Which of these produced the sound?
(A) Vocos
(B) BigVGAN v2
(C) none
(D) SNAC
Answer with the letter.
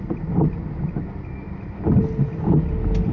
C